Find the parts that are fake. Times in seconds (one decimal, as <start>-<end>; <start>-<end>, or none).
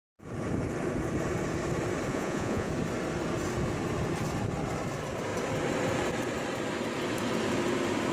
2.1-2.7